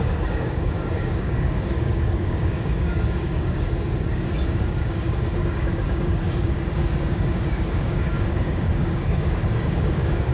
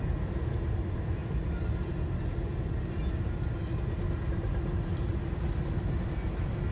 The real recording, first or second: second